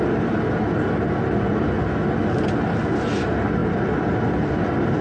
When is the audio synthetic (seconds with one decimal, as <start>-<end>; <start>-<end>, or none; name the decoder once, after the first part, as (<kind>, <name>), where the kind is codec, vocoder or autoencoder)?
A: none